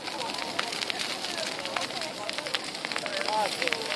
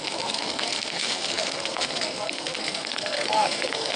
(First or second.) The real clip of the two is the first